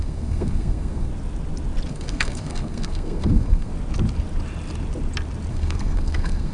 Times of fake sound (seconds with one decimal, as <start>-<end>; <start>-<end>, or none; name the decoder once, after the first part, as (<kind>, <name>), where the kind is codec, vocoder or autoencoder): 0.0-1.1 (codec, SNAC); 1.9-3.7; 5.5-6.5